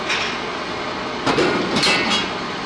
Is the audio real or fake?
real